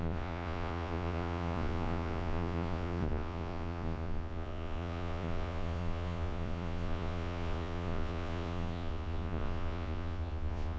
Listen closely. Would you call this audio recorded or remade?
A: remade